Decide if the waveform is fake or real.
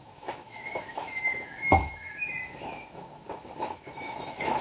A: fake